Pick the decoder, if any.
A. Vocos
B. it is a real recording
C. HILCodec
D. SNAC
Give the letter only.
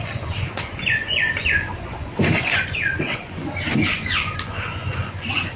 A